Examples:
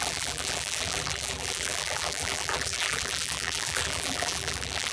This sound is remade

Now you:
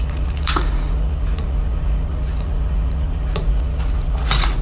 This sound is remade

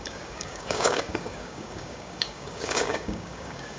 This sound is remade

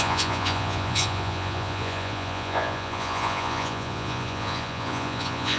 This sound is remade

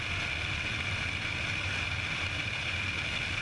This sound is remade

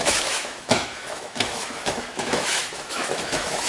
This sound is remade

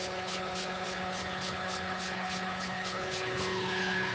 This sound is remade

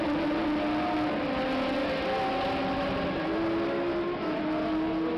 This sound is recorded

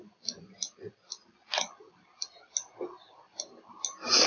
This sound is recorded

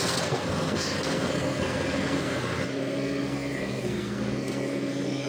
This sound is remade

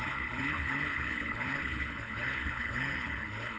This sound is remade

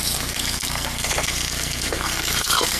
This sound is remade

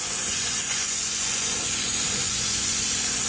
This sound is remade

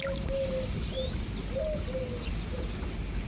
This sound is recorded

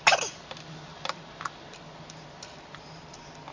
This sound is recorded